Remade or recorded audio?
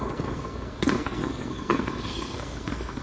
remade